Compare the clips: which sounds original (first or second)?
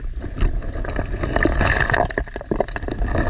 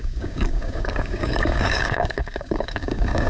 first